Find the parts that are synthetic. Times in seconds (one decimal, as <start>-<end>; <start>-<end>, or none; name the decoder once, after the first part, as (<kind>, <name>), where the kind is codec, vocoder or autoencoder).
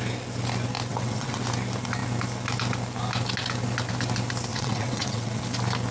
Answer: 0.9-1.4 (vocoder, WaveNeXt); 4.5-5.4